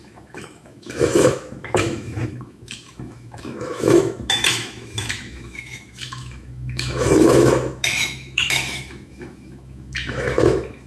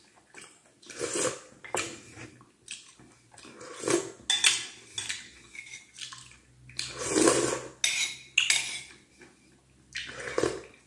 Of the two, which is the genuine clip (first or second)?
second